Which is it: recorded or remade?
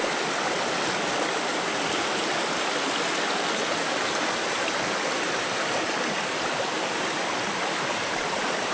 recorded